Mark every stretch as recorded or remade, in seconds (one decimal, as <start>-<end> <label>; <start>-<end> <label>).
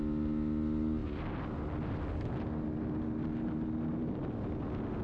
0.0-5.0 recorded